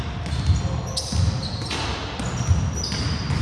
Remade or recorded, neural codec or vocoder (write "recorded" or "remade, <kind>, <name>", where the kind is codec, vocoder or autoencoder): recorded